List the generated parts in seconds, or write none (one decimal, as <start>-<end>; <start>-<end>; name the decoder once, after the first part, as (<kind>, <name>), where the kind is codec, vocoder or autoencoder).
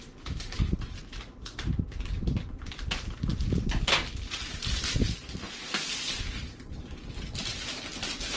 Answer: none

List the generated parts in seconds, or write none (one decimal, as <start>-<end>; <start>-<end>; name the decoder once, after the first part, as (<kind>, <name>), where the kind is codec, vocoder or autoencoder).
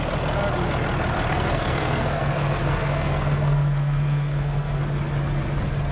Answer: 1.3-4.8 (codec, SNAC)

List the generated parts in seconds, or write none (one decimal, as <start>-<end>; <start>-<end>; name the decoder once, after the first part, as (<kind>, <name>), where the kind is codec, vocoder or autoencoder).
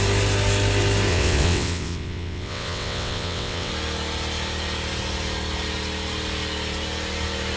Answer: 1.1-3.7 (vocoder, WaveNeXt)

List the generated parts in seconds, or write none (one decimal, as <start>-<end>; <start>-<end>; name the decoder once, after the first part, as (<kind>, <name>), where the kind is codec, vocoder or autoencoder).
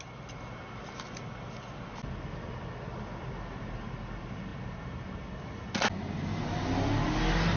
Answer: none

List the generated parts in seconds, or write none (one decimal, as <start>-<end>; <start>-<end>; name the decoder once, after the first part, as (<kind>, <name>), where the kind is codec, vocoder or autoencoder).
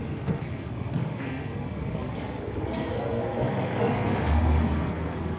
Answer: 0.0-5.4 (codec, SNAC)